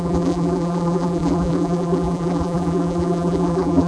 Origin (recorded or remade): remade